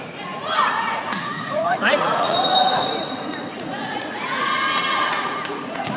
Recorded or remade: remade